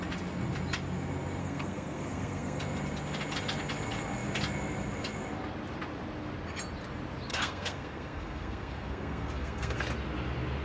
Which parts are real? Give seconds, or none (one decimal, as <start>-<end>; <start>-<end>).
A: 0.0-1.4; 2.6-7.3; 9.8-10.6